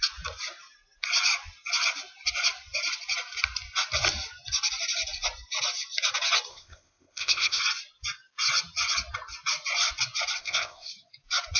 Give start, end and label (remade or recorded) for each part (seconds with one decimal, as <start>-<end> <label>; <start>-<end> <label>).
0.0-6.5 recorded; 6.5-7.6 remade; 7.6-10.4 recorded; 10.4-10.9 remade; 10.9-11.6 recorded